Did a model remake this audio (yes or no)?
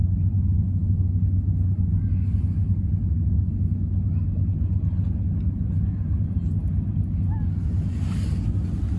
no